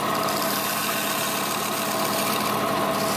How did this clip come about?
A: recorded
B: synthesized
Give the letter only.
A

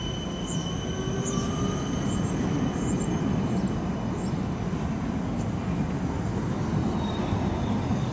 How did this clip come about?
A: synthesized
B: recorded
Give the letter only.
B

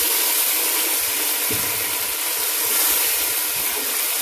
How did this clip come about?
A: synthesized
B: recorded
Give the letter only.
B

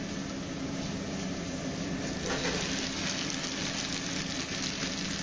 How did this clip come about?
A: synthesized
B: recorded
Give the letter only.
B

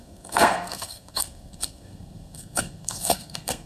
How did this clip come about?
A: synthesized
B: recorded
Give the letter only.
A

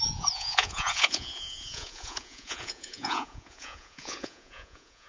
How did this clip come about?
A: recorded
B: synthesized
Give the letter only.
B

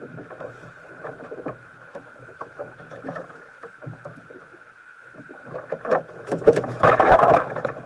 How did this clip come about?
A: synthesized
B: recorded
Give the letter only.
A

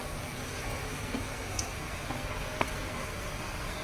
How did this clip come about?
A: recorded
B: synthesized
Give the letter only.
B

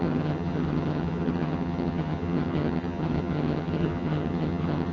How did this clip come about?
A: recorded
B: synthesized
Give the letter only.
B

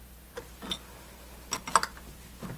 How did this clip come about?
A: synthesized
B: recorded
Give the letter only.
B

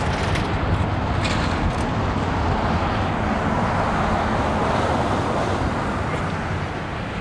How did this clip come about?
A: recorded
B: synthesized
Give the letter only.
A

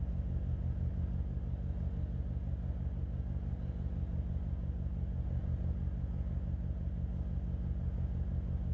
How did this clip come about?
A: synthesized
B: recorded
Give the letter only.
B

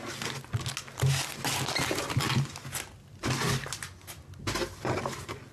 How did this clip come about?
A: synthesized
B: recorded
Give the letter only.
B